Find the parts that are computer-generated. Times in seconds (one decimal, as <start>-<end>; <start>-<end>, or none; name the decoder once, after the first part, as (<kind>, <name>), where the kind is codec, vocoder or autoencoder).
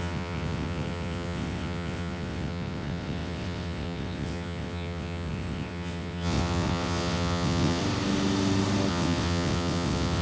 0.0-7.8 (vocoder, WaveNeXt); 8.9-10.2